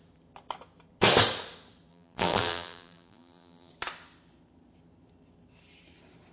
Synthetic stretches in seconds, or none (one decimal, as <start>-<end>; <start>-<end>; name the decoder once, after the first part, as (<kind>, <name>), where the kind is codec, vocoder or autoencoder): 1.9-3.7 (vocoder, BigVGAN v2)